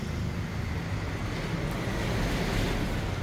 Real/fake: real